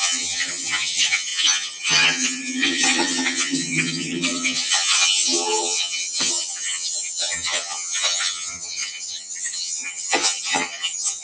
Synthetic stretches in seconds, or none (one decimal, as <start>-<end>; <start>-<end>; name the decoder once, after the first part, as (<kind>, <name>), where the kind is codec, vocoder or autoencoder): 0.0-11.2 (vocoder, HiFi-GAN)